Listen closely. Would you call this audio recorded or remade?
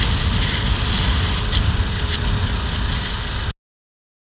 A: recorded